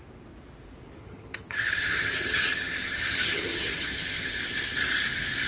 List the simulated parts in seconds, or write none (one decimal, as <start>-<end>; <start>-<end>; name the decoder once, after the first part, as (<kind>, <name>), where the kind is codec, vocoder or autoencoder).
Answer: 1.0-4.3 (vocoder, HiFi-GAN)